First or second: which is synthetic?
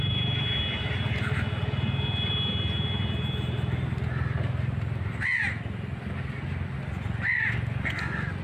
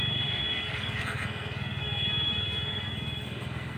second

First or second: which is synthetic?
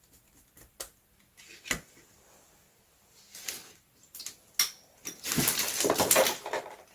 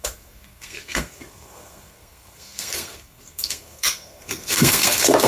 second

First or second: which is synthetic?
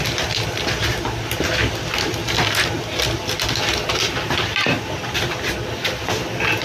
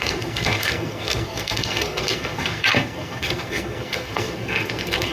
second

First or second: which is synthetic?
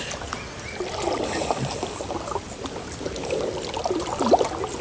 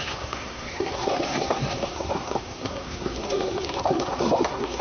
second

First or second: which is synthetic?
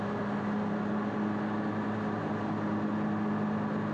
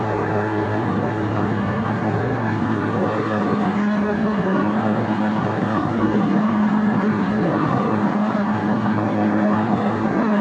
second